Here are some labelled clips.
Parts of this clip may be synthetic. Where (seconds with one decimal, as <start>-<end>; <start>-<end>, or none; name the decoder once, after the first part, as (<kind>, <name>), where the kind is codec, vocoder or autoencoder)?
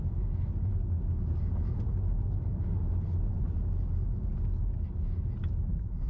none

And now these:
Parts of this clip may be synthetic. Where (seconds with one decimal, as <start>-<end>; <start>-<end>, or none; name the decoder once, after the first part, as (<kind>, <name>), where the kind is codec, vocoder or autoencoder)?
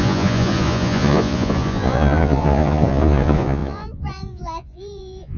0.0-5.4 (vocoder, Vocos)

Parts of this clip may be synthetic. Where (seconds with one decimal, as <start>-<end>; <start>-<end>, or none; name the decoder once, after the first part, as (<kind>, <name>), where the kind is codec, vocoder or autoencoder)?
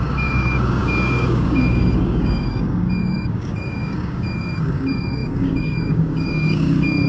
0.0-7.1 (codec, DAC)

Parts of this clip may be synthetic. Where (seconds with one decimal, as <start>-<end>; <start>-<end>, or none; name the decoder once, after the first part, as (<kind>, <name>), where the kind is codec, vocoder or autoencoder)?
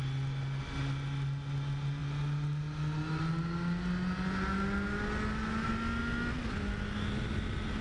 none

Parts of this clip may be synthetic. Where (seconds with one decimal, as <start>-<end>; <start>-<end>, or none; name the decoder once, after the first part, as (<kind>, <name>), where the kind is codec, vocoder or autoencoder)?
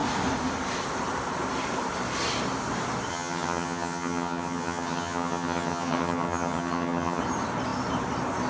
3.1-7.2 (vocoder, HiFi-GAN)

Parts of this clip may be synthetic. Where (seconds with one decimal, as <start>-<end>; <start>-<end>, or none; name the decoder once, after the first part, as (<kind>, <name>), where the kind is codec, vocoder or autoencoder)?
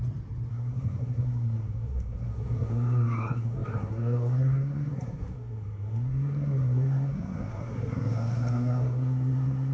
0.5-9.7 (codec, SNAC)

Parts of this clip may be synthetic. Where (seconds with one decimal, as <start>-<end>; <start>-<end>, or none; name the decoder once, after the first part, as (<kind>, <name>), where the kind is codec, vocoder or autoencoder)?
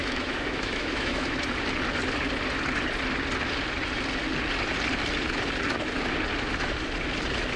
0.0-1.4 (autoencoder, DAC-VAE)